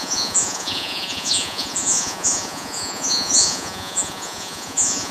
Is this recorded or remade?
remade